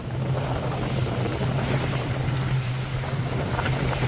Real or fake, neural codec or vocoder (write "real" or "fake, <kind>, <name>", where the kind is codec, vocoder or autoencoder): fake, vocoder, BigVGAN v2